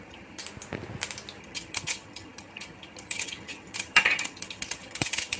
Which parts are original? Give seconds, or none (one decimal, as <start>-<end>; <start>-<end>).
0.4-1.4